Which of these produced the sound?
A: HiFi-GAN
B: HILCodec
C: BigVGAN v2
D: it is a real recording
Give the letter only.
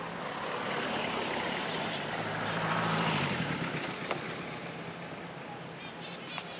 C